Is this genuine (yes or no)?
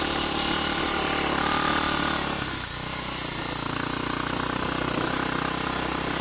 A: yes